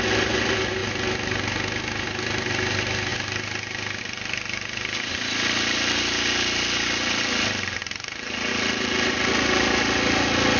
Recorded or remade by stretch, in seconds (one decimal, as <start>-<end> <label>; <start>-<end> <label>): 0.0-10.6 recorded